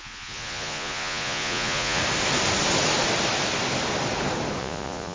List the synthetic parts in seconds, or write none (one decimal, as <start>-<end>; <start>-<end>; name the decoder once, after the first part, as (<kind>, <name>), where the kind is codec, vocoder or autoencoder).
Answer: 0.0-2.0 (vocoder, Vocos); 4.6-5.1